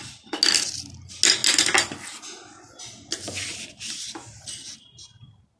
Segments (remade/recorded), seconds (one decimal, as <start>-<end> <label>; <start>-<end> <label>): 0.0-5.6 recorded